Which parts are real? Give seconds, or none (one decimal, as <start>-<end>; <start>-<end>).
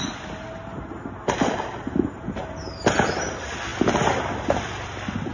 0.0-5.3